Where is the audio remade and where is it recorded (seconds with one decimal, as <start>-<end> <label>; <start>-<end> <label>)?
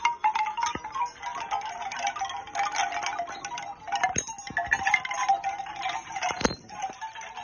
0.0-7.4 recorded